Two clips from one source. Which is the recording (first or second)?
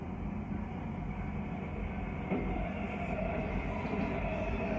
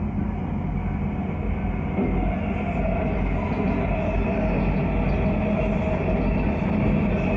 second